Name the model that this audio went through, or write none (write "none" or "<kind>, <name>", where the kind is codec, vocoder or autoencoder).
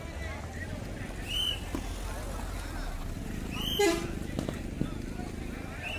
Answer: none